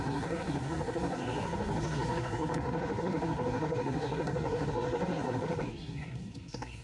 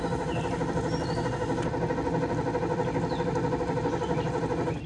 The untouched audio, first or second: second